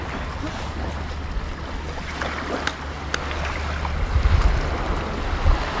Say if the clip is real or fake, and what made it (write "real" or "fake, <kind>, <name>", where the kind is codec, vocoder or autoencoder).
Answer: real